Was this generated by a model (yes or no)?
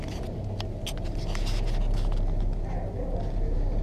no